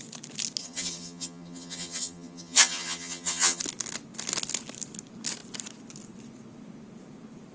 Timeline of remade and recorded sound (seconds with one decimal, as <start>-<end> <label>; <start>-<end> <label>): 0.0-0.6 recorded; 0.6-3.6 remade; 3.6-7.5 recorded